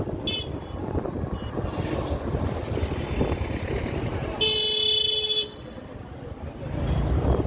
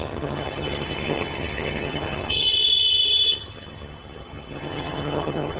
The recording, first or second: first